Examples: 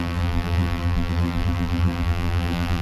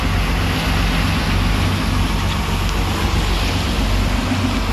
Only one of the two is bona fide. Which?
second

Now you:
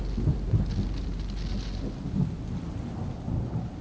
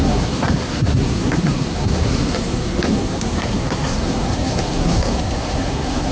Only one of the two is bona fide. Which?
first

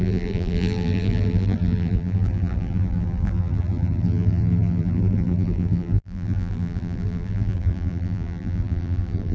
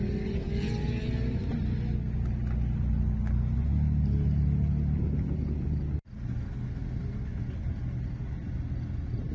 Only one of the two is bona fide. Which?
second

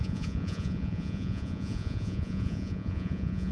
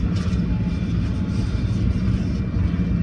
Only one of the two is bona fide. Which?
second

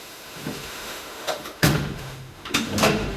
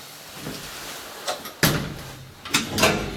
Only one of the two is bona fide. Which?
second